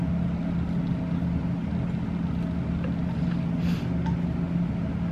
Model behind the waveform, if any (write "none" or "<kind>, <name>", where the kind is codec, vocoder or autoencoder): none